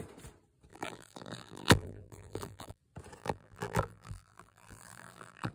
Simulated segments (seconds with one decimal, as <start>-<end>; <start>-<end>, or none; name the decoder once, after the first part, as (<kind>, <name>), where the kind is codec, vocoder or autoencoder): 0.7-2.8 (vocoder, BigVGAN v2); 3.2-5.5